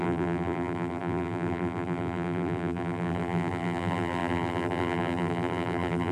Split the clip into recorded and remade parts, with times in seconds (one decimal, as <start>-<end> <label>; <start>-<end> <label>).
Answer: 0.0-6.1 remade